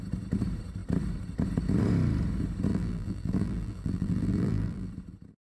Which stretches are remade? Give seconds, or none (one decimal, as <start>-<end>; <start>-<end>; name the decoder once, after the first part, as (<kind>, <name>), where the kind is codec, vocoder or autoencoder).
2.7-4.9 (vocoder, BigVGAN v2)